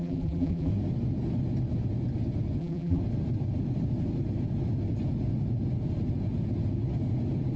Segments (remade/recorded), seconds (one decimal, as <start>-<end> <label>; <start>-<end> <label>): 0.0-0.7 remade; 0.7-2.6 recorded; 2.6-3.0 remade; 3.0-7.6 recorded

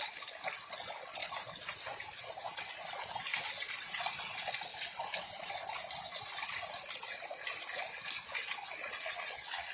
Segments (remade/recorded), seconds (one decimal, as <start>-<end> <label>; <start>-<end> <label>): 0.0-8.8 recorded; 8.8-9.7 remade

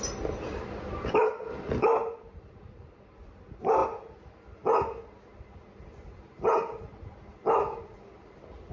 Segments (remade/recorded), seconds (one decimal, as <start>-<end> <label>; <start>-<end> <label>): 0.0-8.7 recorded

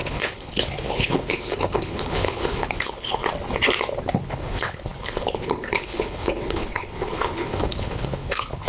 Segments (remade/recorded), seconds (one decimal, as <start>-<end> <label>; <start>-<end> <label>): 0.0-3.2 remade; 3.2-4.1 recorded; 4.1-8.7 remade